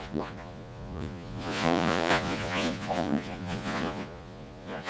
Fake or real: fake